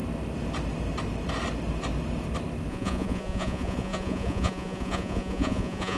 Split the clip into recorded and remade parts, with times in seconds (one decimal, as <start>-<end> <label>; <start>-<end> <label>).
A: 0.0-2.7 recorded; 2.7-6.0 remade